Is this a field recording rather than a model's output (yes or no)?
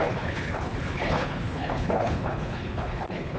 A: no